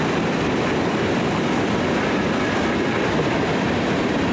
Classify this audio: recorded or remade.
recorded